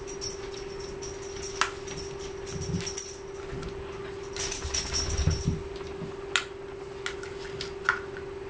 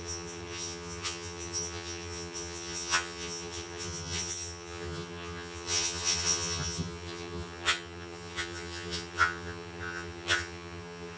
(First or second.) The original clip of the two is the first